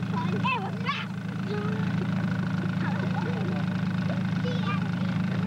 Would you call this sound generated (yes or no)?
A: no